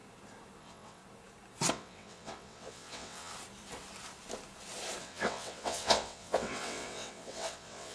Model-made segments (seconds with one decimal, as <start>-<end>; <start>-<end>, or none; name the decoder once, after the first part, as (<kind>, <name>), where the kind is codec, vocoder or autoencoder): 0.6-1.0 (vocoder, WaveNeXt); 1.7-3.3; 5.0-7.9